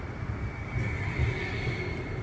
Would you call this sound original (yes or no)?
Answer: yes